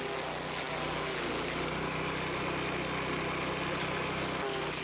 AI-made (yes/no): no